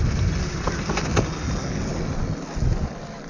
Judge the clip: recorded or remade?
recorded